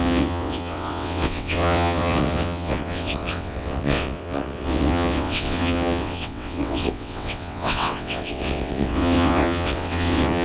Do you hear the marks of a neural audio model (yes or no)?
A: yes